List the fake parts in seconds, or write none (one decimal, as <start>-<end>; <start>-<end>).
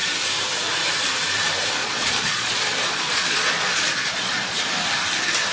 1.8-4.6